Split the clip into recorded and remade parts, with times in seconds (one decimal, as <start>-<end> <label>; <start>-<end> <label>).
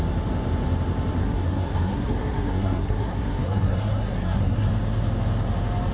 0.0-1.2 recorded; 1.2-4.7 remade; 4.7-5.9 recorded